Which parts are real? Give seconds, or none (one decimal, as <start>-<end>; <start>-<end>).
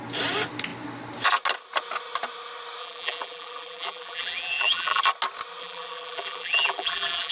0.0-2.8; 5.0-5.6